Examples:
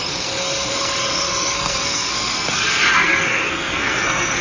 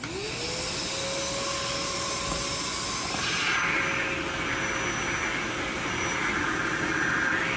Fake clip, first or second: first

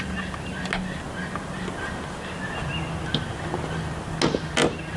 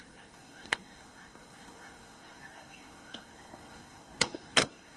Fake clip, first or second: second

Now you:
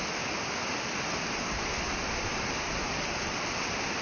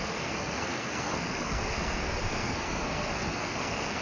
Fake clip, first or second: second